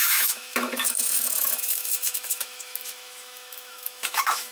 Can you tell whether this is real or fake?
fake